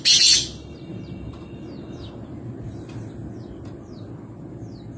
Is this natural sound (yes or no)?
yes